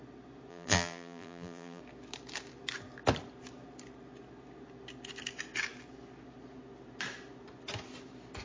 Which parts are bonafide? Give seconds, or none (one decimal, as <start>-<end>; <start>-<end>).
0.0-0.5; 1.8-8.4